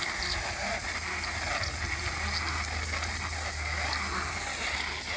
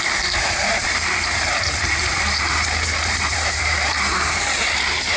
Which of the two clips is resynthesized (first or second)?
second